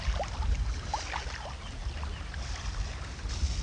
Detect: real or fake real